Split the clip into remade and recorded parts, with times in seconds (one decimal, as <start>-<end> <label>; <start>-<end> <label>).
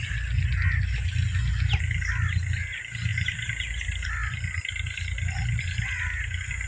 0.0-6.7 recorded